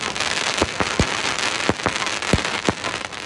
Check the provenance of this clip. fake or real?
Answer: real